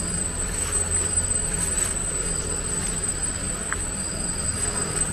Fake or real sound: fake